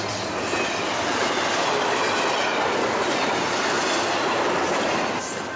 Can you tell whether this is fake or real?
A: real